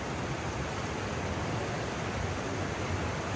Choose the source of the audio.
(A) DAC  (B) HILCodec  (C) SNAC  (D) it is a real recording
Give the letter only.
D